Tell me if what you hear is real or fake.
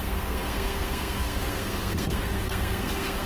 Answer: fake